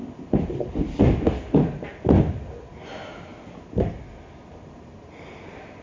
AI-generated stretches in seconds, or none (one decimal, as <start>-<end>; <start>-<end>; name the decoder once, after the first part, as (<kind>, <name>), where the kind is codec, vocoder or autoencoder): none